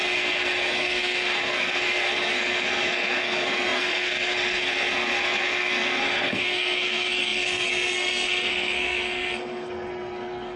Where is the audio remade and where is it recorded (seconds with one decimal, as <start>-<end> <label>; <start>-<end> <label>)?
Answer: 0.0-10.6 remade